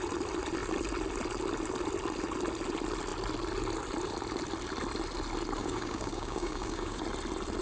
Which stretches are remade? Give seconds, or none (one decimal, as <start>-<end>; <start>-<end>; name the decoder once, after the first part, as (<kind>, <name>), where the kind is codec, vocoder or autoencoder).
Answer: 5.6-7.0 (codec, DAC)